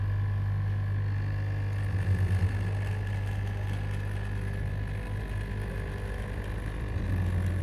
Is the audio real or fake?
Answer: real